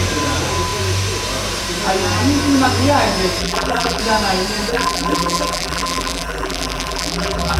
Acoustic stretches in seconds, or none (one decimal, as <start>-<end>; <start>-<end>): 0.0-3.4; 4.0-4.7